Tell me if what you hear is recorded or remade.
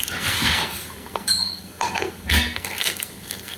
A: remade